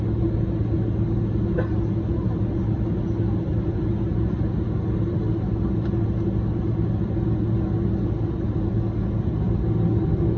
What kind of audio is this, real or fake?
real